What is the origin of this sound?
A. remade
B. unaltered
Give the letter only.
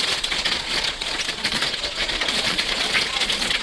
A